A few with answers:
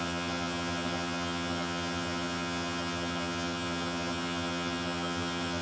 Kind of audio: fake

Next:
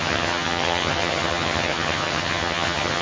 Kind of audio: fake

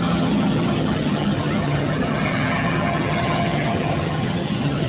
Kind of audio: fake